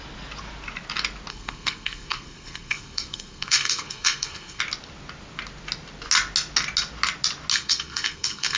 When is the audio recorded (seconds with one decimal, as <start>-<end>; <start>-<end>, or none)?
0.0-1.3; 4.6-7.5